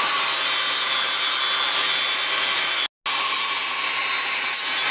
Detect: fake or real real